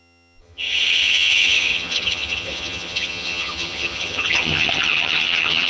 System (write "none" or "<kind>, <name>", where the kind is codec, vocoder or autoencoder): vocoder, HiFi-GAN